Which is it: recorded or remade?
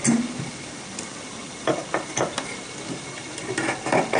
recorded